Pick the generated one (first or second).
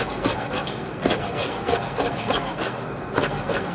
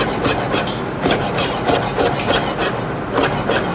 first